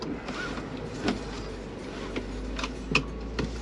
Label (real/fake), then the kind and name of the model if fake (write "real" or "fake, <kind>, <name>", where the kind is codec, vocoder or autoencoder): real